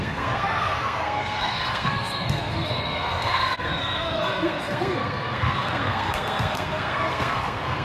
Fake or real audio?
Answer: fake